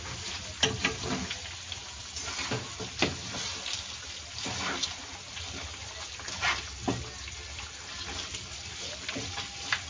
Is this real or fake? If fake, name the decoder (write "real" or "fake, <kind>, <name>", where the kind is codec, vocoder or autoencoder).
real